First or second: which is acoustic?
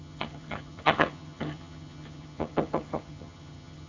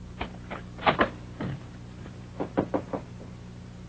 second